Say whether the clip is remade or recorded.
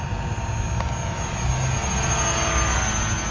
recorded